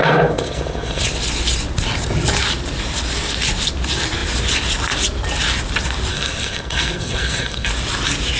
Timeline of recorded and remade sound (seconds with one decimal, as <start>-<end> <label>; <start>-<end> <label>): 0.0-1.0 remade; 1.0-6.1 recorded; 6.1-7.7 remade; 7.7-8.4 recorded